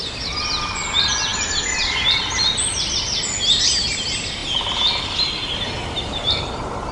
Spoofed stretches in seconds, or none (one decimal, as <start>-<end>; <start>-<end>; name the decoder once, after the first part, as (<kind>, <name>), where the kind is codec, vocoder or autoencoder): none